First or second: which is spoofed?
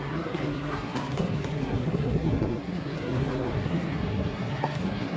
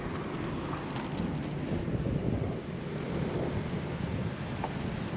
first